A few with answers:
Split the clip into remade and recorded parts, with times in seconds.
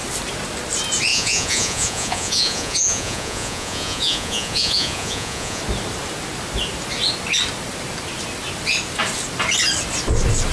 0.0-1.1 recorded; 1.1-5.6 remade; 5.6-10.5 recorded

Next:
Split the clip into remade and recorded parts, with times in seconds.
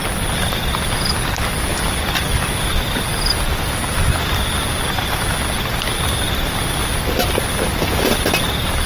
0.0-8.9 recorded